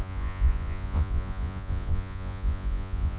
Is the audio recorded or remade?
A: remade